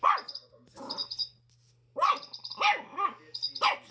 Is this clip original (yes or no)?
yes